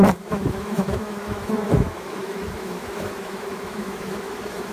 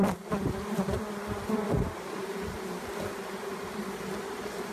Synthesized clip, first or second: first